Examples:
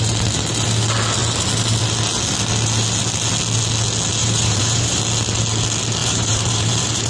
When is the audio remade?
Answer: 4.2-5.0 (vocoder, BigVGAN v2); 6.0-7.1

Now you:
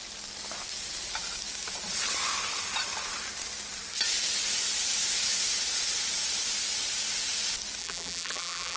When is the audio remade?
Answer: 7.8-8.8 (vocoder, BigVGAN v2)

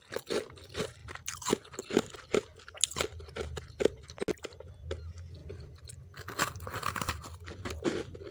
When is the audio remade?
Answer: none

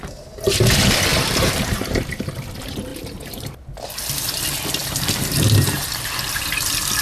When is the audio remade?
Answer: 1.1-2.1 (vocoder, BigVGAN v2); 2.9-3.5; 4.8-6.4